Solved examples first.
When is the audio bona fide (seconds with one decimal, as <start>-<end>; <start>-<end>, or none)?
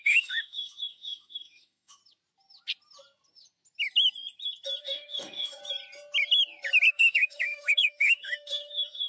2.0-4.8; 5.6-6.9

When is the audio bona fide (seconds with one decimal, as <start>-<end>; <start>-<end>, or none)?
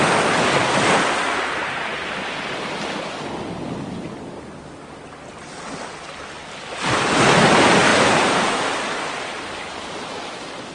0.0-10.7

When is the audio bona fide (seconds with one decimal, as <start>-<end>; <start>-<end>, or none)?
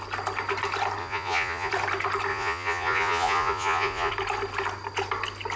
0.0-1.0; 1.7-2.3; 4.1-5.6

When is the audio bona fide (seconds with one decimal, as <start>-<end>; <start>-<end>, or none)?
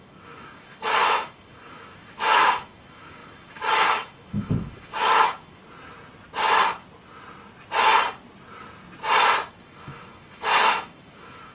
5.6-9.5